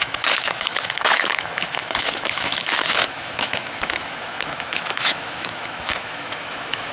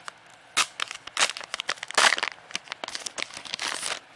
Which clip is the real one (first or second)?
second